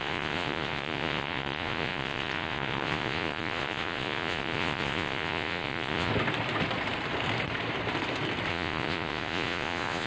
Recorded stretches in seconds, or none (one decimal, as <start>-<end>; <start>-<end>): 6.1-8.5